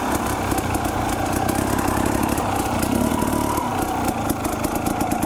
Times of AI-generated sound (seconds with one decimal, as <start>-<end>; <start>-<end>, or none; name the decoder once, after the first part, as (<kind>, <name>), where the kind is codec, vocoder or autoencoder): none